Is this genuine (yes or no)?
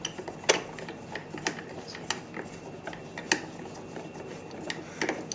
yes